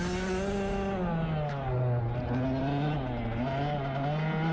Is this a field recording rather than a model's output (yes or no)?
yes